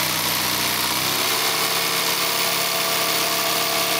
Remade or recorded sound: recorded